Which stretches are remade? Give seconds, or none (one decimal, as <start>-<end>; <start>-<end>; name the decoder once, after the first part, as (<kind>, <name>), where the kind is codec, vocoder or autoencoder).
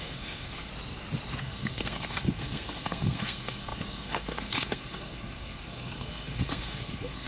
0.0-0.7 (codec, SNAC); 1.4-7.3